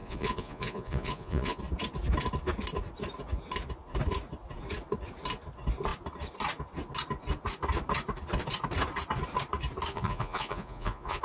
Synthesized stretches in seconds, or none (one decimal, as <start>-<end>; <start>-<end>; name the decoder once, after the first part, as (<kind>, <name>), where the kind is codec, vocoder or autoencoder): 0.0-1.6 (vocoder, Vocos); 9.9-11.2